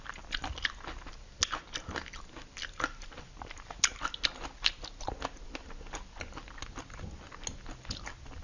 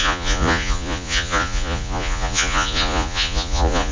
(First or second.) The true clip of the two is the first